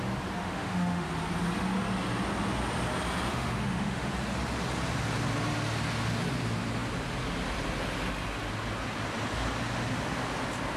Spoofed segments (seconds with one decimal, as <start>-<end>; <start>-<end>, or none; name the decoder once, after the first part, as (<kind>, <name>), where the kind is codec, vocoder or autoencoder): 0.4-1.1 (autoencoder, DAC-VAE); 3.3-4.1